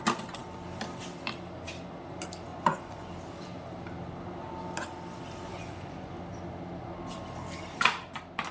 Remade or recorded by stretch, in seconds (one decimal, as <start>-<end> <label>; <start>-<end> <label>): 0.0-2.5 recorded; 2.5-3.1 remade; 3.1-5.5 recorded; 5.5-6.1 remade; 6.1-8.5 recorded